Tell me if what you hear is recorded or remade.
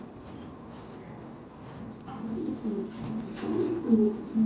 recorded